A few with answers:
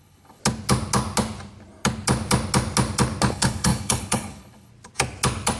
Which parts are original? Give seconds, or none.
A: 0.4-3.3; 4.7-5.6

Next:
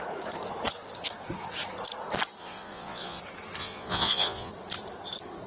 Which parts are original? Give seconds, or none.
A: 0.0-2.4; 3.2-3.6; 4.5-5.5

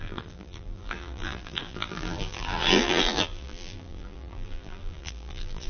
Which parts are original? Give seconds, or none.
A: none

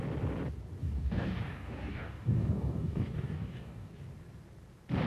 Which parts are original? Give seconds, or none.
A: 0.0-0.8; 3.9-5.1

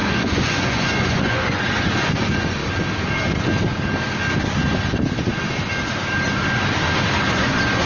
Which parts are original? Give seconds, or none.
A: 2.6-7.3